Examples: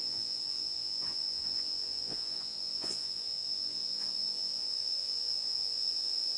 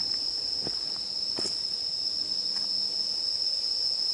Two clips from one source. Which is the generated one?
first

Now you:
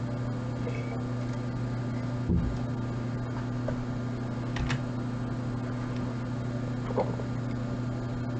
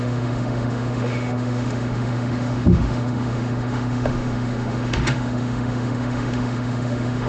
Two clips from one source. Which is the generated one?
second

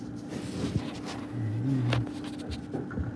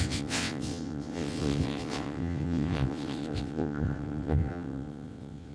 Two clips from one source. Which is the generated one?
second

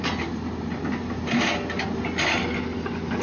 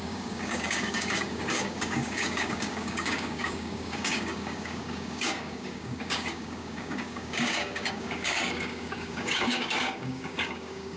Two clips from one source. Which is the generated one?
second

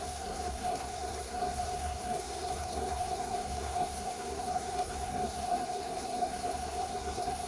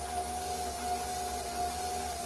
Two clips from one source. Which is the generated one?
first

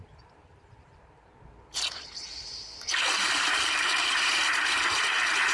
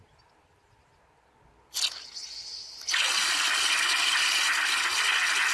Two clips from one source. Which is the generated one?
first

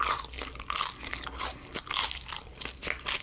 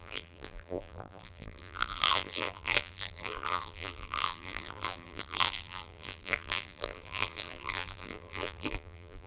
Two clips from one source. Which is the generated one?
second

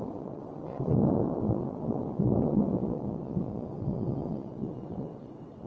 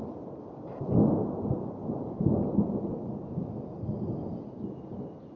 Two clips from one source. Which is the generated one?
first